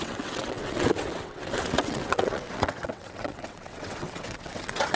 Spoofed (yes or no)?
yes